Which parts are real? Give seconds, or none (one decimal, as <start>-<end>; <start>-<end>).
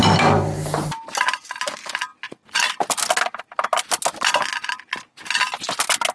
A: 0.0-6.1